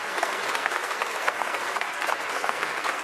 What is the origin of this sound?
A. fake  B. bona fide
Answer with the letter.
A